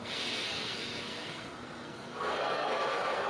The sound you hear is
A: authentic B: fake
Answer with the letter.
B